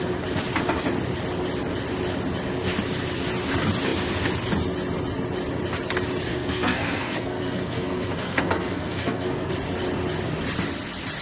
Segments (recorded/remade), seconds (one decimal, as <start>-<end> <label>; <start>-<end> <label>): 0.0-6.3 recorded; 6.3-9.5 remade; 9.5-11.2 recorded